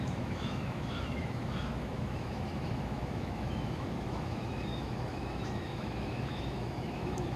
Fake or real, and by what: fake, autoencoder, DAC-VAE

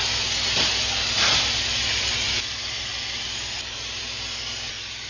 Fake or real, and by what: real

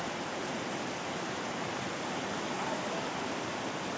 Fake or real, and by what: real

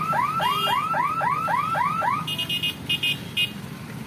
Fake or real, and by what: real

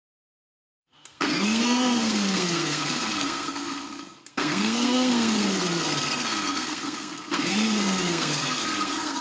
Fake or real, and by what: fake, codec, SNAC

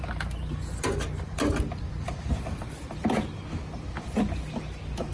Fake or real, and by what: real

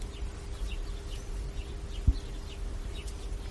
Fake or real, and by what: real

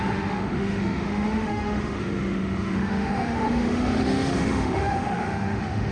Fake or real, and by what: fake, autoencoder, DAC-VAE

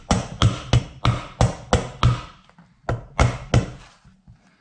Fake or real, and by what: real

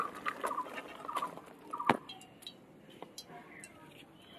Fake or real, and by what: real